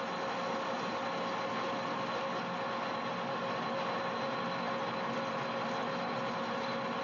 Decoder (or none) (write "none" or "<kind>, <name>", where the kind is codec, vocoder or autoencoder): none